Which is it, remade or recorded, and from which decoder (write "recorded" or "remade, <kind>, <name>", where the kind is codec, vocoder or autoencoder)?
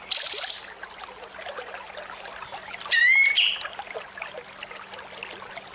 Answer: recorded